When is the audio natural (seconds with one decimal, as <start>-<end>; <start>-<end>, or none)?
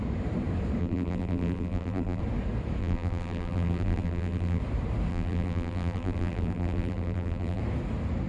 0.0-0.8; 2.2-2.8; 4.6-5.1; 7.6-8.3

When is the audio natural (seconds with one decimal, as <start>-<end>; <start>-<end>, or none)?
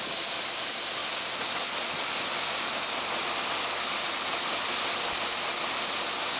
0.0-6.4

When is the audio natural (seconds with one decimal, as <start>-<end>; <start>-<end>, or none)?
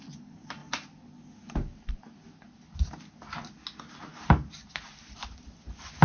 0.0-4.1; 4.8-6.0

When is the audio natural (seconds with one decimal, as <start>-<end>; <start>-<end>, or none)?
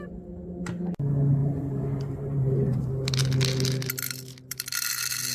0.0-1.4; 2.9-5.3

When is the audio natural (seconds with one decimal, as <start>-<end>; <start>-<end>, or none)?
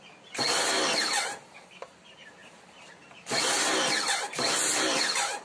0.0-5.4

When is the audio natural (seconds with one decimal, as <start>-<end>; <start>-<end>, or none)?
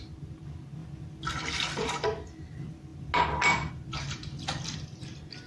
0.0-5.5